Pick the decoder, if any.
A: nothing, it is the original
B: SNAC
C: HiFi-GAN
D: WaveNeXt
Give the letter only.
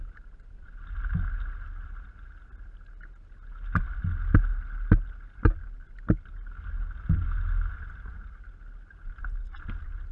A